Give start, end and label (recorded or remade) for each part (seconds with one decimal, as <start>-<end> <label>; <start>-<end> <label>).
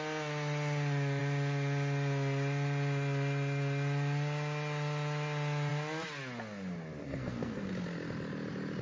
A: 0.0-7.0 recorded; 7.0-7.7 remade; 7.7-8.8 recorded